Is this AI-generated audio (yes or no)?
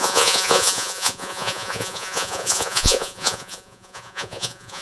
yes